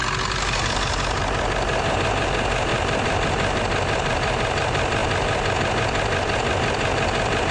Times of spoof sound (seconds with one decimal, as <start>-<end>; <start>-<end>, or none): 2.7-3.6